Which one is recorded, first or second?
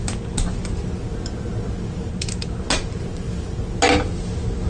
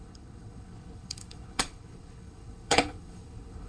first